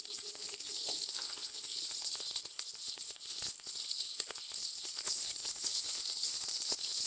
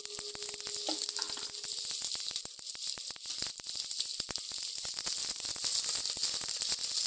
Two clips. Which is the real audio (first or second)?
second